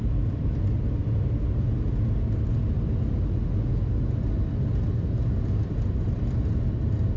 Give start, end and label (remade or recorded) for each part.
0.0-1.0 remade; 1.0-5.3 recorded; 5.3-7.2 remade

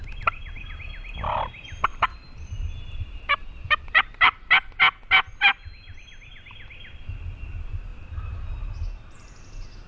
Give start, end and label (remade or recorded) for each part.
0.0-1.9 recorded; 1.9-4.5 remade; 4.5-7.9 recorded; 7.9-8.5 remade; 8.5-9.9 recorded

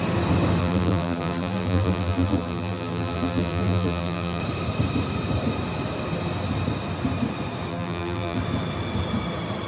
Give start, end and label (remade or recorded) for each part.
0.0-0.6 recorded; 0.6-4.4 remade; 4.4-7.7 recorded; 7.7-8.4 remade; 8.4-9.7 recorded

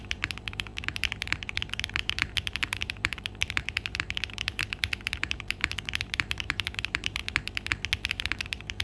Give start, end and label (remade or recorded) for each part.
0.0-7.2 remade; 7.2-8.1 recorded; 8.1-8.8 remade